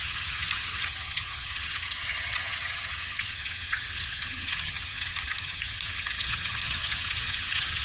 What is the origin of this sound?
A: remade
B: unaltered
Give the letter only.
A